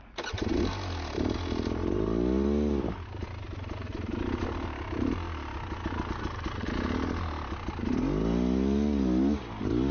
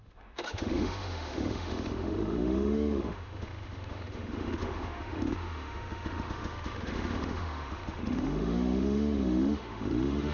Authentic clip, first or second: first